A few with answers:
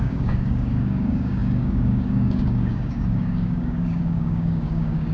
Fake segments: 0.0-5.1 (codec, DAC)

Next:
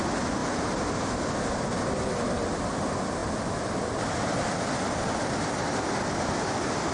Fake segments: none